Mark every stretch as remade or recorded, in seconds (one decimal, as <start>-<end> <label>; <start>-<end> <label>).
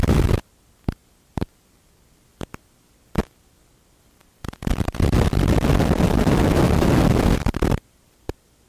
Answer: 0.0-8.7 recorded